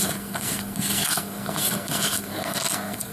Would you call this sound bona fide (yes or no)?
no